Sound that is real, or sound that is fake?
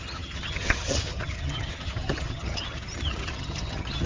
fake